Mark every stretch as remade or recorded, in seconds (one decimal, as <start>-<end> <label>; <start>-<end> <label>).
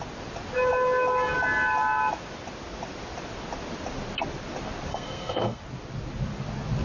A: 0.0-4.9 recorded; 4.9-5.6 remade; 5.6-6.8 recorded